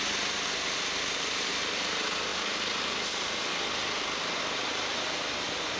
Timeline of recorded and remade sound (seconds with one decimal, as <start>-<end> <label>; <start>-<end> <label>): 0.0-2.3 remade; 2.3-2.8 recorded; 2.8-3.5 remade; 3.5-4.4 recorded; 4.4-5.8 remade